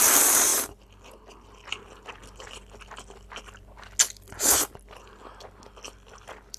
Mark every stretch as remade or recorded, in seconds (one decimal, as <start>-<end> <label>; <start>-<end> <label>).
0.0-6.6 recorded